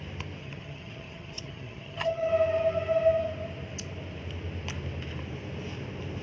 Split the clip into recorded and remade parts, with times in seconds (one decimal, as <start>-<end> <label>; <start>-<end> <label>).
0.0-0.4 recorded; 0.4-2.3 remade; 2.3-6.2 recorded